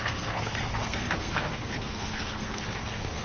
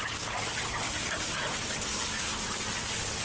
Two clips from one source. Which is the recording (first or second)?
second